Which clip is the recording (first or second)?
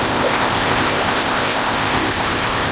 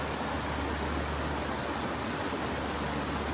second